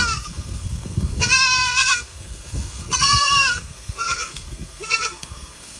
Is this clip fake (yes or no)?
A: yes